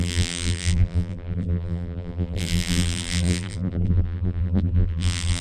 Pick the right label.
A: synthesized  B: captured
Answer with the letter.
A